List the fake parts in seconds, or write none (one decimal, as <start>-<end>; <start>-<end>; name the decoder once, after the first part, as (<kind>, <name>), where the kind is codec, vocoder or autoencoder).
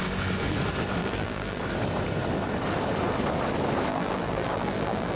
1.0-1.6 (vocoder, BigVGAN v2); 3.9-5.2